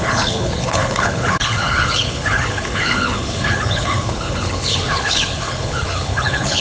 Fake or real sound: fake